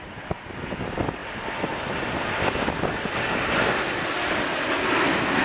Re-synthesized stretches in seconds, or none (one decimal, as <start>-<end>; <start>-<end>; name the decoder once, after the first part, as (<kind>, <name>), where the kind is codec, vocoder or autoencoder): none